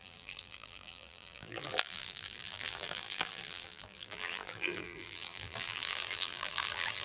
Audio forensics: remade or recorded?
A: remade